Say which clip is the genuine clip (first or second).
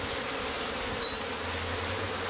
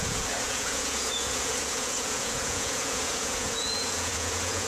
first